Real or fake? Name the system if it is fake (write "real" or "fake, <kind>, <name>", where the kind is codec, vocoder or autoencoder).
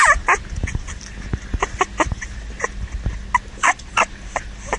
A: real